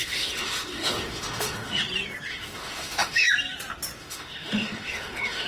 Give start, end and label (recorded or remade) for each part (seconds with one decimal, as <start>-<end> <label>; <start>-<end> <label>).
0.0-1.8 remade; 1.8-2.3 recorded; 2.3-3.3 remade; 3.3-4.0 recorded; 4.0-5.5 remade